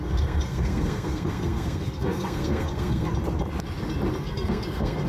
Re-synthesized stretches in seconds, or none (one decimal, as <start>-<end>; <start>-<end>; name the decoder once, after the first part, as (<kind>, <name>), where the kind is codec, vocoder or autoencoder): 0.0-3.1 (codec, SNAC); 4.2-5.1